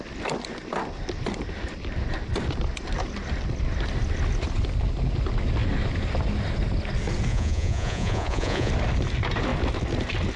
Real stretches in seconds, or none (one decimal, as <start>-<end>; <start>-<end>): 0.0-7.3; 8.7-10.4